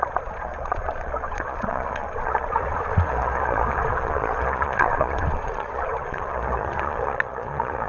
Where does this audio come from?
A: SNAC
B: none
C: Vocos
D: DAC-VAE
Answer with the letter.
C